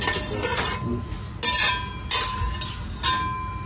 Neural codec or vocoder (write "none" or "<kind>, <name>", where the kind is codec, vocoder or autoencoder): none